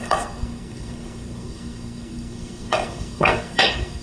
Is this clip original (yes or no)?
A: no